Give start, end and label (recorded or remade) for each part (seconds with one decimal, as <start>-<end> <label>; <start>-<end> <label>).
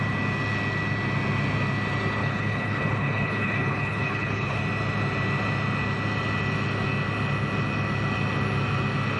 0.0-2.2 recorded; 2.2-4.6 remade; 4.6-9.2 recorded